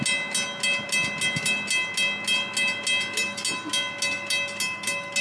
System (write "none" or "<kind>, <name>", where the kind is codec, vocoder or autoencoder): none